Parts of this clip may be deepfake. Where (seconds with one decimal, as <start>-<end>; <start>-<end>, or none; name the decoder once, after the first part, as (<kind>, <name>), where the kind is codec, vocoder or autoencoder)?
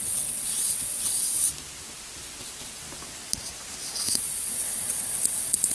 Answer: 0.0-1.5 (vocoder, WaveNeXt); 4.1-5.7